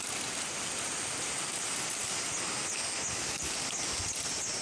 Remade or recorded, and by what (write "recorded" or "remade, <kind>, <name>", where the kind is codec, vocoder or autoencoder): recorded